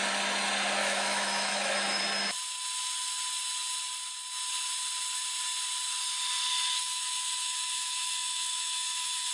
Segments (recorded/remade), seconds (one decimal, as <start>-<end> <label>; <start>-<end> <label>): 0.0-0.8 recorded; 0.8-2.0 remade; 2.0-6.5 recorded; 6.5-9.3 remade